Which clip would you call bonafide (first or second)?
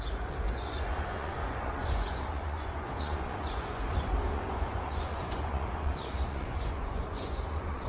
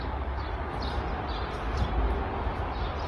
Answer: second